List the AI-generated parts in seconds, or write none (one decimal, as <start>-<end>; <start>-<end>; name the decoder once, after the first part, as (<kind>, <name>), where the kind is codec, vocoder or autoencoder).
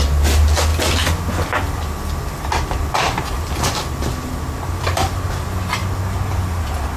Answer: none